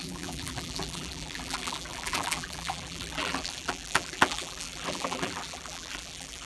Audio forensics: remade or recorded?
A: remade